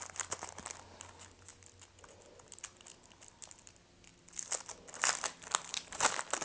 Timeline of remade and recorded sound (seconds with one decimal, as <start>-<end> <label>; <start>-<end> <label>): 0.0-6.4 recorded